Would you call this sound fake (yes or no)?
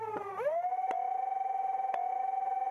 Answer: no